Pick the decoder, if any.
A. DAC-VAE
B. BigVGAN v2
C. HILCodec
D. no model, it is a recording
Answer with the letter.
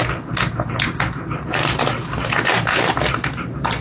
D